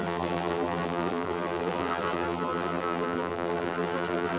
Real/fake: fake